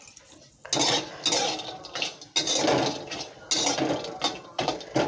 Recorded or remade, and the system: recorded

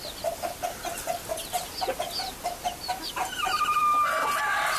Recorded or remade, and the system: recorded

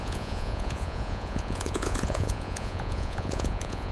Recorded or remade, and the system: remade, vocoder, Vocos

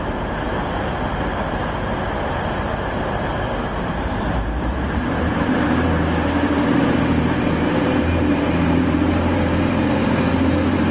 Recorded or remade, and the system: remade, vocoder, BigVGAN v2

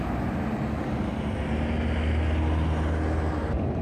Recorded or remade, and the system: recorded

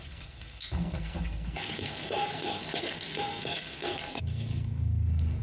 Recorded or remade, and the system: remade, codec, SNAC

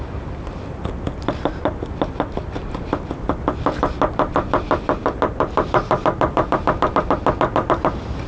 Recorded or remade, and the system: recorded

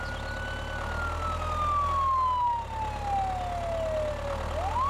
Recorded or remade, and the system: recorded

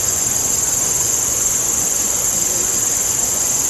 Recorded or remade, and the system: remade, vocoder, Vocos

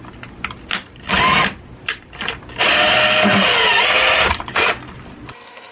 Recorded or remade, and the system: recorded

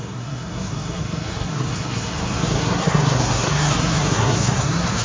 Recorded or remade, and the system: remade, codec, SNAC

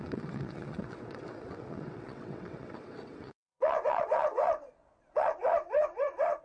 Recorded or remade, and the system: remade, vocoder, WaveNeXt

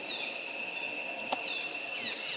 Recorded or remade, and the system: recorded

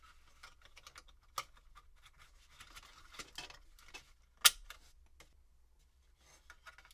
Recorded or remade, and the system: recorded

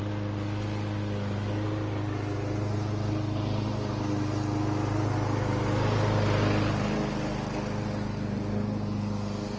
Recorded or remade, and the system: recorded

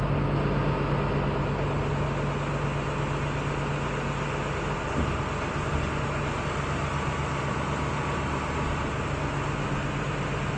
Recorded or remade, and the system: recorded